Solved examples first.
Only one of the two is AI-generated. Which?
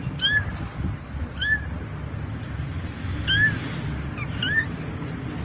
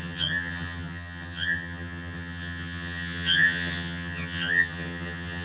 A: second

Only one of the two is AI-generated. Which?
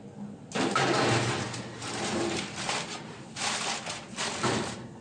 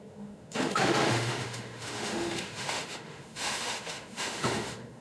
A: second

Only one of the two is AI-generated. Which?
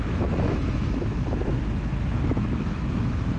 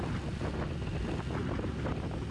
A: first